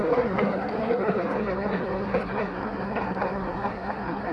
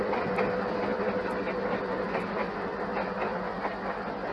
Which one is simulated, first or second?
first